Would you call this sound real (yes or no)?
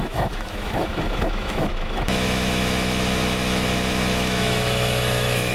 no